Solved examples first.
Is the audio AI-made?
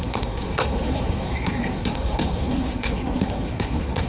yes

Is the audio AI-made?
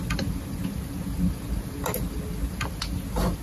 no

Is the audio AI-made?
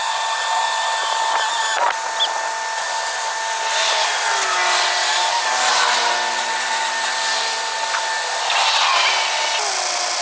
no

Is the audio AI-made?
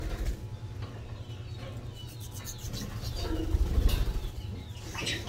no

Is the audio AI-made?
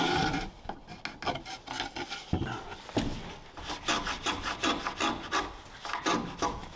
no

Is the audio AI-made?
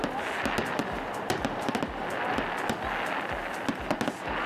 no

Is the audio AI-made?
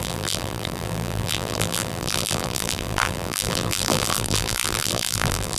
yes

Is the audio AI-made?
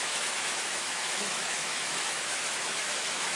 yes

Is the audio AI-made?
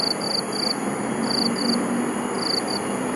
no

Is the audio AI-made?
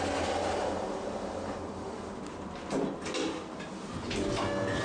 no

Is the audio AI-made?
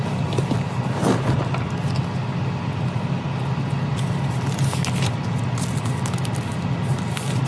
no